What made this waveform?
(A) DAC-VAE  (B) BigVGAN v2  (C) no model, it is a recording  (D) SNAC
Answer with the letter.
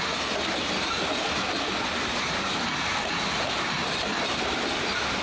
C